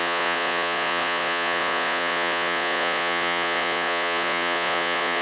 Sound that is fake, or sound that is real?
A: fake